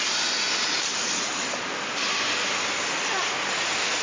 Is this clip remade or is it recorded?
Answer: recorded